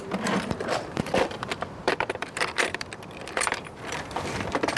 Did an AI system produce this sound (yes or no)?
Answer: yes